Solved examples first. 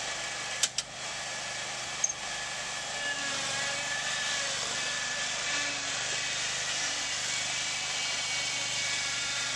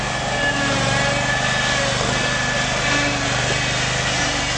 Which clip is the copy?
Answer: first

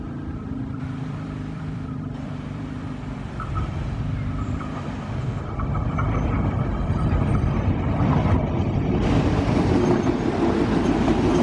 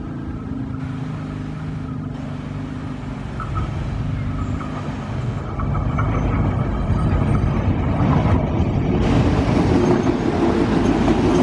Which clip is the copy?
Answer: first